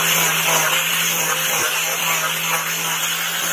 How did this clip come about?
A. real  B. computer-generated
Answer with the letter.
A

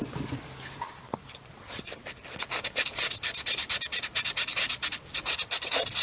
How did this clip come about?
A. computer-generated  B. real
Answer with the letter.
B